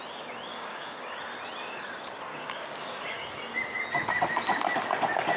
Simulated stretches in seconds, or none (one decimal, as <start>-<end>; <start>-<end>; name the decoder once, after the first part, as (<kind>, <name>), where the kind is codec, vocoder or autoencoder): 0.5-1.2 (codec, DAC); 2.3-3.2